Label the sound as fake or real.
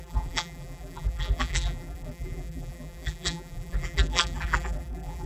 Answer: fake